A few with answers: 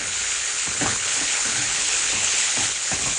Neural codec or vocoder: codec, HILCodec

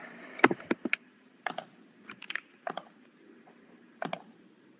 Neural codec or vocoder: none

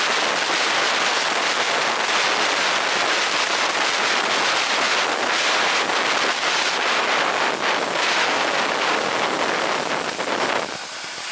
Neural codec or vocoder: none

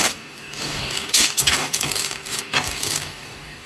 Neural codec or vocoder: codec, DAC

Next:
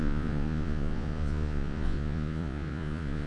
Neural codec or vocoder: vocoder, Vocos